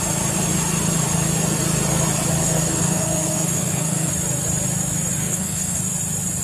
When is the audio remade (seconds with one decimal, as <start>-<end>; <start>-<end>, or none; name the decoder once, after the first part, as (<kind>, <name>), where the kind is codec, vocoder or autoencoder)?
2.4-4.1 (codec, SNAC); 5.2-5.8

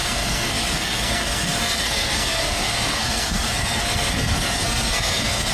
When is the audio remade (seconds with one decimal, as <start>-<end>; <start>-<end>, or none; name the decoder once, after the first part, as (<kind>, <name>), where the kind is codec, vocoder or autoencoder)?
0.0-5.5 (codec, SNAC)

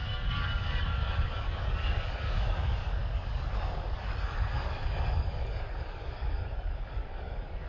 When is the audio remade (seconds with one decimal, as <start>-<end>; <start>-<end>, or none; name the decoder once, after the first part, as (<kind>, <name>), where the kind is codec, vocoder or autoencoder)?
0.0-7.7 (codec, DAC)

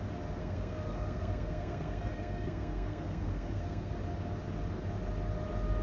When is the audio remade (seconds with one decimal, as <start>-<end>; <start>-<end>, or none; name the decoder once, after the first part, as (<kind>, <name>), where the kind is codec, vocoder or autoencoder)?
0.4-3.9 (codec, SNAC)

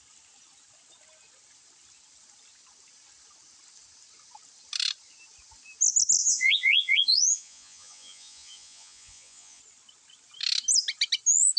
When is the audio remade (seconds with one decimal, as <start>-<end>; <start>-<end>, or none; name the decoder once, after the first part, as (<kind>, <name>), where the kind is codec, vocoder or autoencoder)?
6.2-9.6 (vocoder, Vocos)

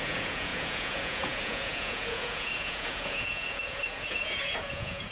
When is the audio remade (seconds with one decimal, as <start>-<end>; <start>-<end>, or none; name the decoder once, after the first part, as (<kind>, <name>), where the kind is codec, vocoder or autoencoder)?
0.0-5.1 (vocoder, Vocos)